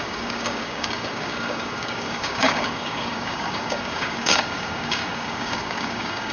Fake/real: fake